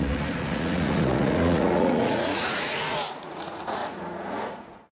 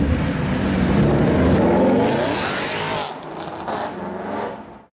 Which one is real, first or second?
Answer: second